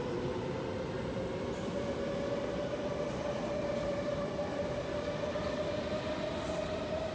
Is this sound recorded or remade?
recorded